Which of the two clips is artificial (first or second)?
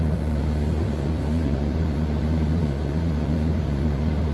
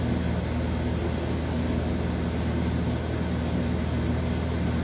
first